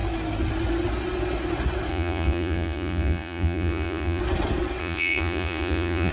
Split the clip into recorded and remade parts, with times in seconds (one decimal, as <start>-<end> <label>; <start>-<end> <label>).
0.0-1.9 recorded; 1.9-4.2 remade; 4.2-4.8 recorded; 4.8-6.1 remade

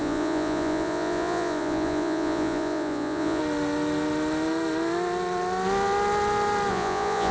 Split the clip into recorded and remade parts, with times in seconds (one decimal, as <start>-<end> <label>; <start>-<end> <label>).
0.0-3.4 remade; 3.4-6.7 recorded; 6.7-7.3 remade